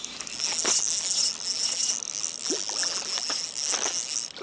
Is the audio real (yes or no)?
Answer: yes